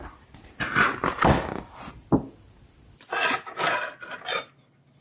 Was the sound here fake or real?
real